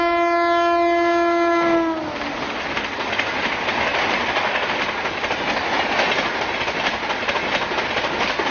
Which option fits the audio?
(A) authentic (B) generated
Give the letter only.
A